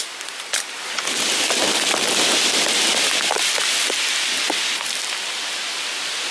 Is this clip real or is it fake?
fake